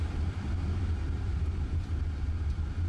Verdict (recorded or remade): recorded